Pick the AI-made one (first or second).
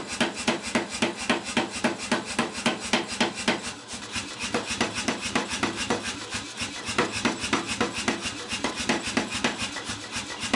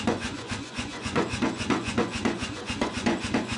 second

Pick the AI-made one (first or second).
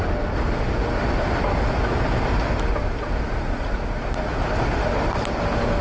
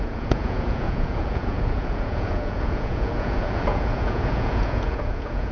second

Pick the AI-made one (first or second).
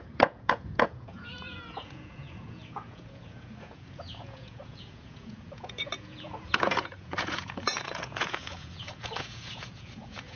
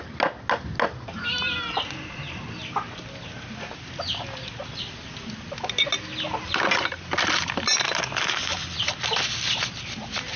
first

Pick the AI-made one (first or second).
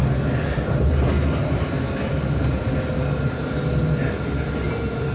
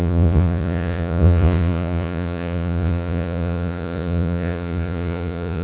second